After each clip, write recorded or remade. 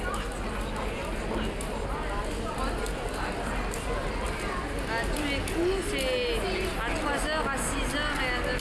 recorded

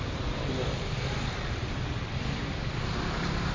remade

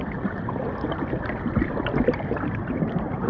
remade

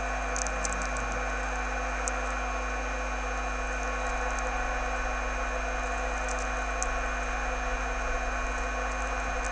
recorded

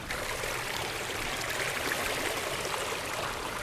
remade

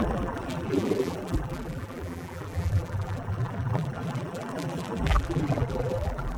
remade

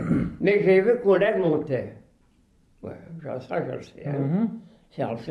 remade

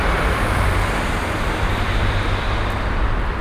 remade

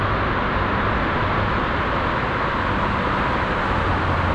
recorded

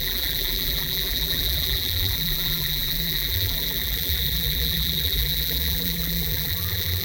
remade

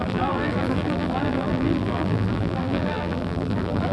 remade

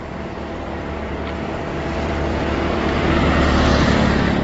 remade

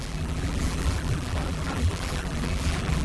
remade